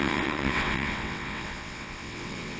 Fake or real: fake